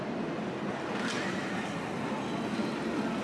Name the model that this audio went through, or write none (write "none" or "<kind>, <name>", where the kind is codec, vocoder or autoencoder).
none